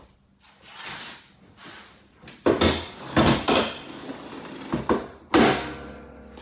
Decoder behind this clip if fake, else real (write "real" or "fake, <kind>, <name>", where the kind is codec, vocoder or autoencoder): real